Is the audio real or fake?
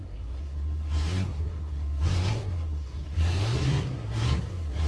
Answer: fake